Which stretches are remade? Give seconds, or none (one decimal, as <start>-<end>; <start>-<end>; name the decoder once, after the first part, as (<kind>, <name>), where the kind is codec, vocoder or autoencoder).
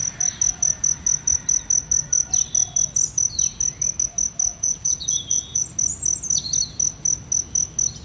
4.5-5.6 (vocoder, Vocos)